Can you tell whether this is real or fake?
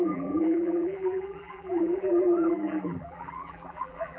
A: fake